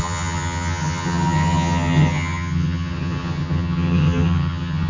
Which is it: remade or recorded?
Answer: remade